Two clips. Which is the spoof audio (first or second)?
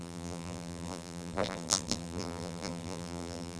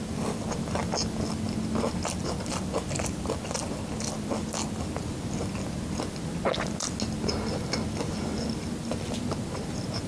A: first